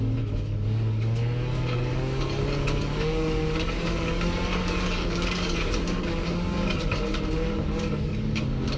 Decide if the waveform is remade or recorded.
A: remade